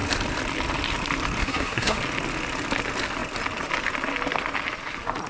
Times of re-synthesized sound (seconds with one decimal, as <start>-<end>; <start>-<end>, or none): 1.4-2.0